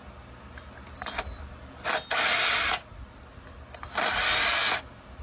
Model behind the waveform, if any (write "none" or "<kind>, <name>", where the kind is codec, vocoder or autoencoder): none